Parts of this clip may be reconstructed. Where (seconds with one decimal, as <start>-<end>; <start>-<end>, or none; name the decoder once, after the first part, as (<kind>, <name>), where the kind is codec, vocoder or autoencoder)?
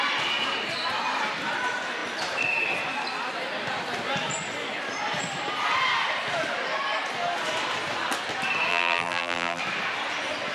8.7-9.6 (vocoder, BigVGAN v2)